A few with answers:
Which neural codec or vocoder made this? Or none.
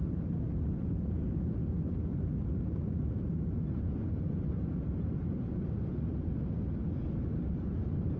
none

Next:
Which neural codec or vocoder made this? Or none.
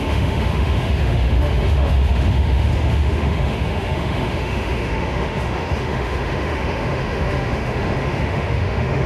autoencoder, DAC-VAE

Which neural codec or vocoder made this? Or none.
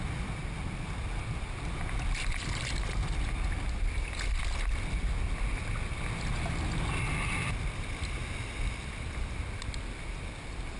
none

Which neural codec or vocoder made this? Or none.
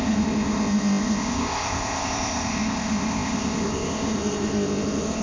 codec, ZipCodec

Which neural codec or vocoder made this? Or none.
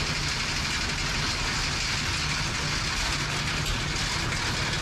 none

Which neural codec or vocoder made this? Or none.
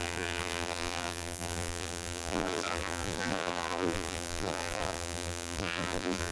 vocoder, BigVGAN v2